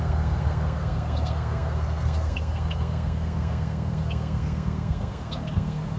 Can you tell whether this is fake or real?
fake